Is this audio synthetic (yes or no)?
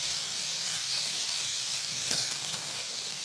yes